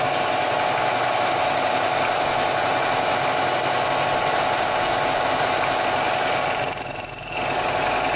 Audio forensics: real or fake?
real